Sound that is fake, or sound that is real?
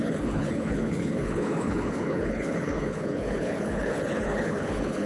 fake